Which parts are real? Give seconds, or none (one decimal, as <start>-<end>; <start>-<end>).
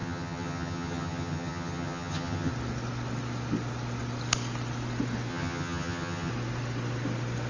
2.5-5.3; 6.3-7.5